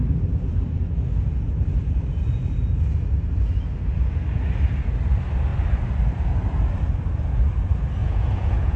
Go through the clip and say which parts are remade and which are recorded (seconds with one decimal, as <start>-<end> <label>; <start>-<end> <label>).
0.0-8.0 recorded; 8.0-8.8 remade